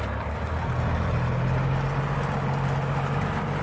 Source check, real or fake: real